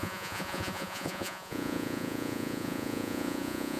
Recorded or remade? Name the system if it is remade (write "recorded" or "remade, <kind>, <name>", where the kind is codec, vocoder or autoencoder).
remade, vocoder, Vocos